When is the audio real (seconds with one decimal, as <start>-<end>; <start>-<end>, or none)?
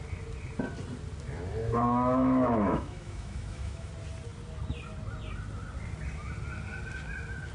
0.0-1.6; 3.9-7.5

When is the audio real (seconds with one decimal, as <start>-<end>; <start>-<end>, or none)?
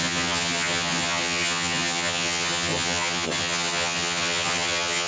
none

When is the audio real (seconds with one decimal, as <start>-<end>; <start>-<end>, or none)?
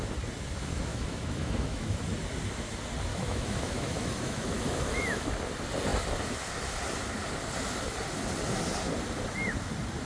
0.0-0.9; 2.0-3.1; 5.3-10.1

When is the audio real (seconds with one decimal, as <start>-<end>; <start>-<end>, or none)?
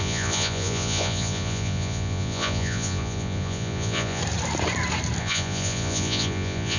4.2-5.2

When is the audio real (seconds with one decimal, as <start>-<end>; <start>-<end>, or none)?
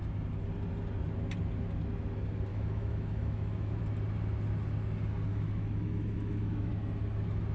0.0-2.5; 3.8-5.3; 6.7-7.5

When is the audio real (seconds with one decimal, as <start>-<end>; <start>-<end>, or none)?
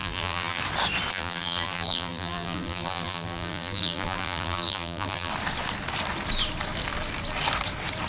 0.6-1.1; 5.3-8.1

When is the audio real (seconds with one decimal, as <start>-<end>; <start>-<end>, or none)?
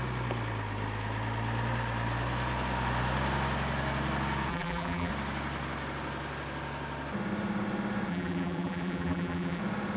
0.0-4.5; 5.1-8.1; 9.6-10.0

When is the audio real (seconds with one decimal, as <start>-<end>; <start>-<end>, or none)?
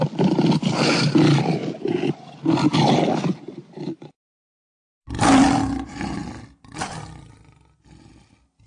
0.0-8.7